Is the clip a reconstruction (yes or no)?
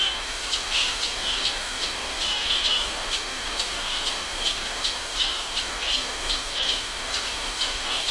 yes